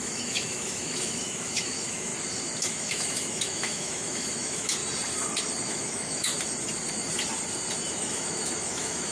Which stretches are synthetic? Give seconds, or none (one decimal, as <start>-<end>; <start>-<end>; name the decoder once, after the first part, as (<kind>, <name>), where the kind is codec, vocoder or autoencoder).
0.0-2.1 (autoencoder, DAC-VAE); 2.6-4.8; 5.6-6.3; 7.9-9.1